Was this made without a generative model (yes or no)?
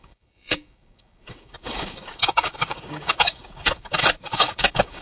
no